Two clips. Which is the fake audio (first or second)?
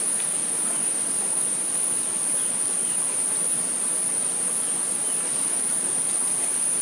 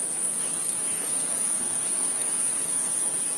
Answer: second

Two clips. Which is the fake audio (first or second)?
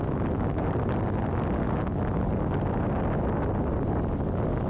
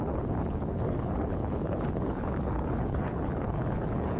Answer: second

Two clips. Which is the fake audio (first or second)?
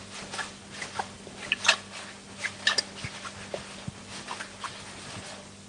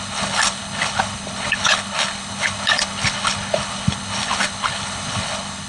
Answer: second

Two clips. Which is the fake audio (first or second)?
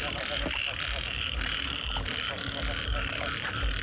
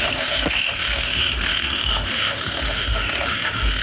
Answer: second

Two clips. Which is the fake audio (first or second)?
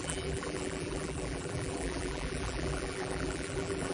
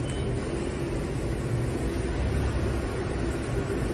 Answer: first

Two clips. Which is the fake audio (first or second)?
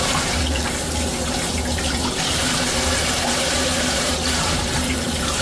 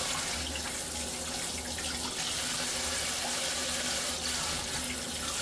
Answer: first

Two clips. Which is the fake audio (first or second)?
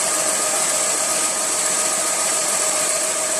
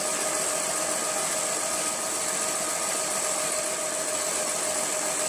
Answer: first